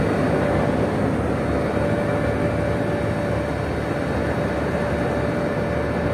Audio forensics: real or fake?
real